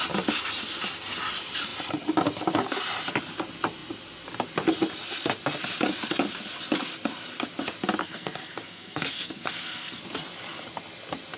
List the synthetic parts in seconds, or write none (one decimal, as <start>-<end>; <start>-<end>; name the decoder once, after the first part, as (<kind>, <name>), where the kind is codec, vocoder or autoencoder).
8.0-10.0 (codec, SNAC)